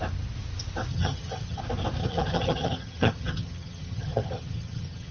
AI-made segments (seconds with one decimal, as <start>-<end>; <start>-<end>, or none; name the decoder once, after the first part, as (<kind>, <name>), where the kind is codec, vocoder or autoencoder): 0.9-1.6 (vocoder, HiFi-GAN); 2.0-5.1